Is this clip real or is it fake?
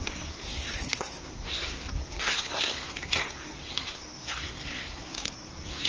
fake